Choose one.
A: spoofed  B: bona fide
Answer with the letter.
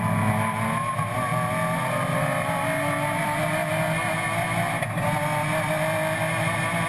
B